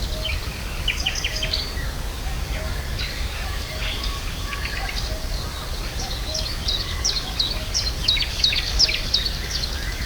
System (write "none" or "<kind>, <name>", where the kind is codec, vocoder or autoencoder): codec, DAC